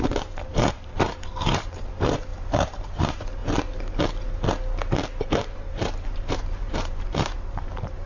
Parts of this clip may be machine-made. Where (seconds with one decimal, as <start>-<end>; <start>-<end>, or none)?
0.0-3.4; 5.2-8.1